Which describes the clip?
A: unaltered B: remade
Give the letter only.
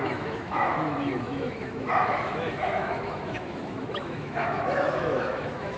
B